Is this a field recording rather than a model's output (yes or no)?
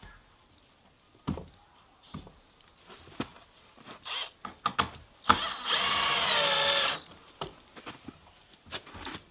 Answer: yes